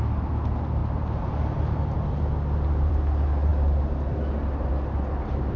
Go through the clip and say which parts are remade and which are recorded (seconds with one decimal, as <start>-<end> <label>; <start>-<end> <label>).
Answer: 0.0-5.6 recorded